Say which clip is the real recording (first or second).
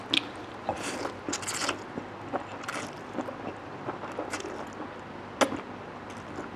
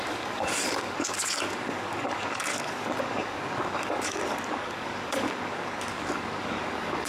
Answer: first